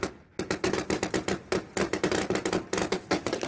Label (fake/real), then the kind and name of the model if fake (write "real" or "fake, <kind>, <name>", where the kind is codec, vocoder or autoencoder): real